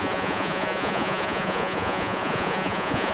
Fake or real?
fake